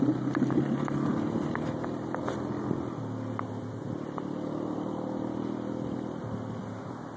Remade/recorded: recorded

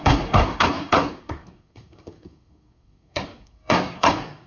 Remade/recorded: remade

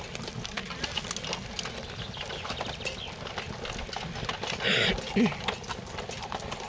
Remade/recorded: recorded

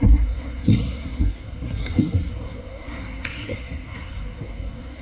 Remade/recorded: remade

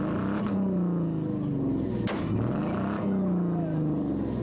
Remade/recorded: recorded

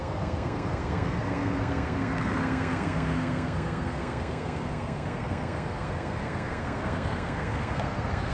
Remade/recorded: remade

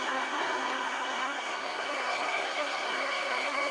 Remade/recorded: remade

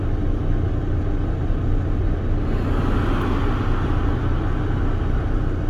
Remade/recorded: recorded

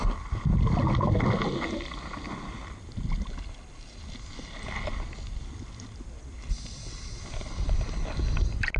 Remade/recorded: recorded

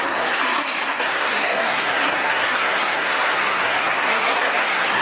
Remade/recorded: remade